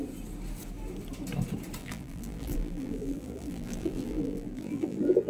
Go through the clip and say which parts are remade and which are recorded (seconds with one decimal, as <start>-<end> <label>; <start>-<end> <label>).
0.0-1.8 recorded; 1.8-5.3 remade